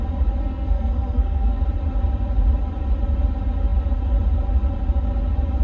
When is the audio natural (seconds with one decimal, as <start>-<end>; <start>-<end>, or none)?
0.0-0.4; 1.6-5.6